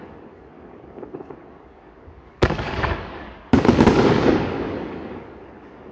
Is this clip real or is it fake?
fake